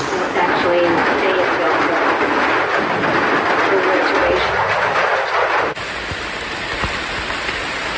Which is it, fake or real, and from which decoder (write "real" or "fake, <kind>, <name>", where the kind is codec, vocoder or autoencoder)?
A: real